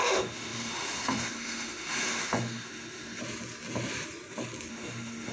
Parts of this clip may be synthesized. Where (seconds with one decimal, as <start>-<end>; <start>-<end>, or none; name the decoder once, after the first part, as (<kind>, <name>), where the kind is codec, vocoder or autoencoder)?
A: 0.0-3.2 (autoencoder, DAC-VAE); 4.7-5.3